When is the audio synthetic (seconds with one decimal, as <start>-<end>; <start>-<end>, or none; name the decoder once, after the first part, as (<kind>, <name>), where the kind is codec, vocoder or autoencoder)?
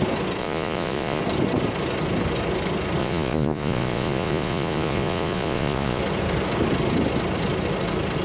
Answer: 0.4-1.2 (vocoder, Vocos); 3.0-6.0